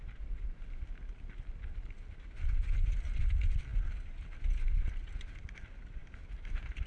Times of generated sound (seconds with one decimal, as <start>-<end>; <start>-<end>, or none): none